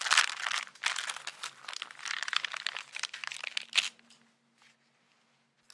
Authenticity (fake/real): real